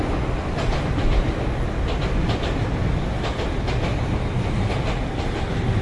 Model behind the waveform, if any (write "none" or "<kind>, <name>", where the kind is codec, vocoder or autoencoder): none